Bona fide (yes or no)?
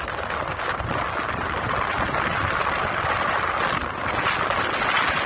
yes